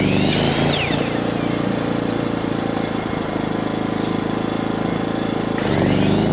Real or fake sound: real